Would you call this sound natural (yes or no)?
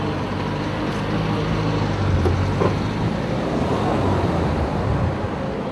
yes